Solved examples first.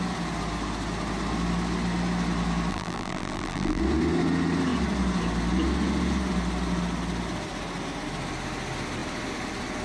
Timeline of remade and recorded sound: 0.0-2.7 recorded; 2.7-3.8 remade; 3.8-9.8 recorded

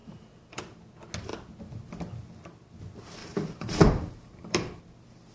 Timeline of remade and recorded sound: 0.0-0.8 remade; 0.8-3.2 recorded; 3.2-4.8 remade; 4.8-5.3 recorded

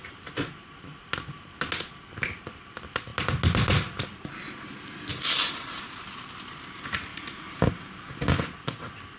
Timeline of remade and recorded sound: 0.0-5.1 recorded; 5.1-6.4 remade; 6.4-7.1 recorded; 7.1-7.7 remade; 7.7-9.2 recorded

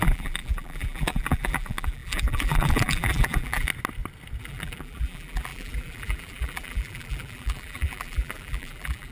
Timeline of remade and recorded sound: 0.0-3.7 remade; 3.7-4.4 recorded; 4.4-9.1 remade